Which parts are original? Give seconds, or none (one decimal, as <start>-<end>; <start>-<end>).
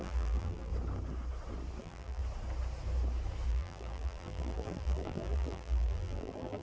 0.7-1.8; 2.2-3.5